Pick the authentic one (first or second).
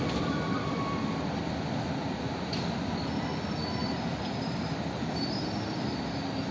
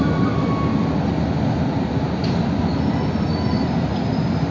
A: second